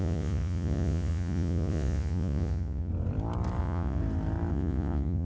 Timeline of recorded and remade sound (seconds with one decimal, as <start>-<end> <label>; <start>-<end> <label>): 0.0-2.9 remade; 2.9-3.6 recorded; 3.6-4.0 remade; 4.0-4.5 recorded; 4.5-5.2 remade